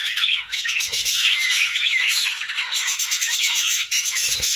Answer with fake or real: fake